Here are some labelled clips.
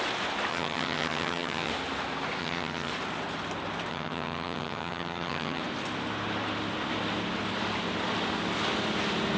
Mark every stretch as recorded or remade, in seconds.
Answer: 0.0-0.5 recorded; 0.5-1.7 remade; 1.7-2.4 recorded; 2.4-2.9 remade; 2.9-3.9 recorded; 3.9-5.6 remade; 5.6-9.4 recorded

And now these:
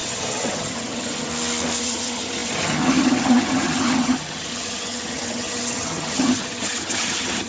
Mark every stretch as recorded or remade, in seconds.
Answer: 0.0-1.3 remade; 1.3-1.8 recorded; 1.8-7.5 remade

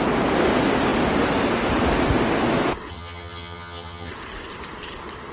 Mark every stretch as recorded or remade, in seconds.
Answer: 0.0-2.9 recorded; 2.9-4.1 remade; 4.1-5.3 recorded

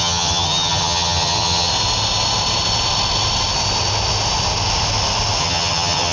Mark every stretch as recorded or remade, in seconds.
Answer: 0.0-1.7 remade; 1.7-5.4 recorded; 5.4-6.1 remade